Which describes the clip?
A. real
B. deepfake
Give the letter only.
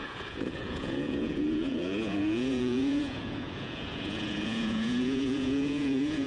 B